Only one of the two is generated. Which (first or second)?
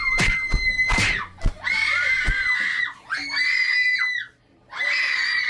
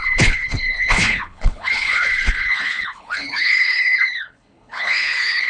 second